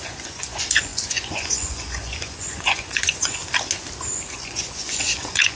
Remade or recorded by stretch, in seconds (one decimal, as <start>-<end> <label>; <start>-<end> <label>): 0.0-3.4 remade; 3.4-4.3 recorded; 4.3-5.6 remade